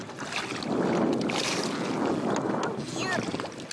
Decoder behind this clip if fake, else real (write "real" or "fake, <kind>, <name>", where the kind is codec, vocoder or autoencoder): real